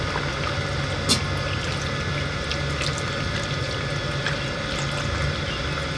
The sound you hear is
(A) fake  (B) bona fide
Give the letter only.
B